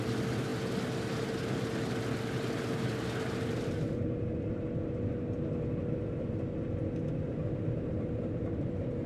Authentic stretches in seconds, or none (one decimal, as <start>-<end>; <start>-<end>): 0.0-7.3